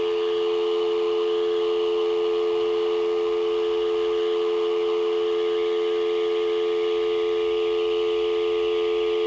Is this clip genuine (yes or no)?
yes